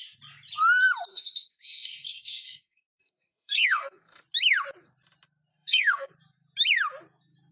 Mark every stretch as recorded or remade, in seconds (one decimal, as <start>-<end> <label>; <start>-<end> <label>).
0.0-1.1 recorded; 1.1-4.2 remade; 4.2-5.5 recorded; 5.5-6.1 remade; 6.1-7.5 recorded